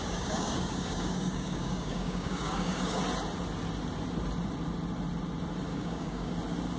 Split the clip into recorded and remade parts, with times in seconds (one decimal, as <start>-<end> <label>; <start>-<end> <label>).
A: 0.0-3.0 remade; 3.0-5.7 recorded; 5.7-6.3 remade; 6.3-6.8 recorded